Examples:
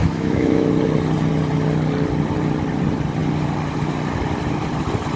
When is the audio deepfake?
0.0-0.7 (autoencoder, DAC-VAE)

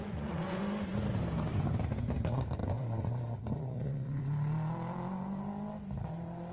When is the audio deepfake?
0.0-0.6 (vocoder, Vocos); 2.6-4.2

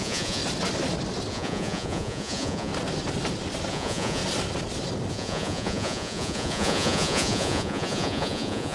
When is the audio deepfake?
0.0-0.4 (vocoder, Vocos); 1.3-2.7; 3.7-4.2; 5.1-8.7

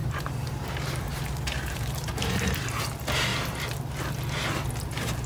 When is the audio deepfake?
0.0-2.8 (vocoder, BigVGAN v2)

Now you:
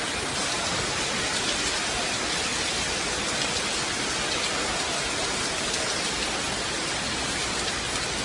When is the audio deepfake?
none